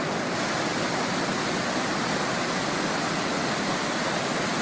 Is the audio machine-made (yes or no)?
no